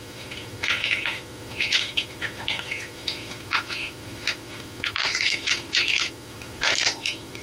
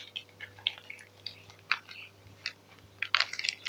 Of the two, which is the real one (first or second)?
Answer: second